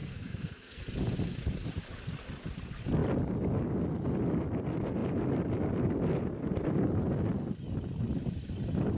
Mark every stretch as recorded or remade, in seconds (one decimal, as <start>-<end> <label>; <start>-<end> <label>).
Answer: 0.0-0.8 remade; 0.8-9.0 recorded